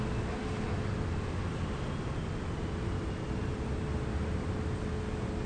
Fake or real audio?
real